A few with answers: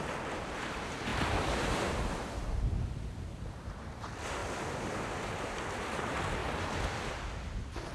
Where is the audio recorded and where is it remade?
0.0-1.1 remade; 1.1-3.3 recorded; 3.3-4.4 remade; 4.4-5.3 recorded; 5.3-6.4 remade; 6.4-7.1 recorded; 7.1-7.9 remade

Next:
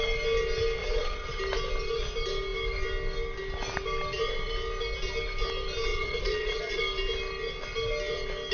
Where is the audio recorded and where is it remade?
0.0-0.8 recorded; 0.8-1.4 remade; 1.4-5.9 recorded; 5.9-6.8 remade; 6.8-8.5 recorded

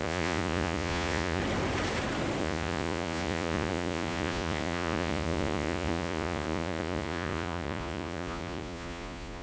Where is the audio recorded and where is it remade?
0.0-1.4 remade; 1.4-2.4 recorded; 2.4-9.4 remade

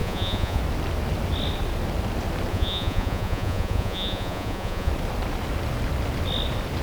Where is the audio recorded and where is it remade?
0.0-0.6 remade; 0.6-2.5 recorded; 2.5-4.9 remade; 4.9-6.8 recorded

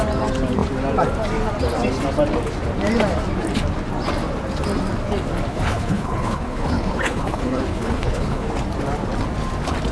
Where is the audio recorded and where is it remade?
0.0-5.5 recorded; 5.5-8.5 remade; 8.5-9.9 recorded